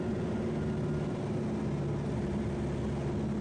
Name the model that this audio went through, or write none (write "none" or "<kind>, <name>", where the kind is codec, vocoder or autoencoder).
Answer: none